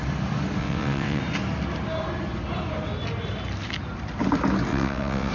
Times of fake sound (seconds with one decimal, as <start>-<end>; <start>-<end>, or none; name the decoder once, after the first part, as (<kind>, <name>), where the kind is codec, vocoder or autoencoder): 0.6-1.2 (vocoder, WaveNeXt); 4.7-5.3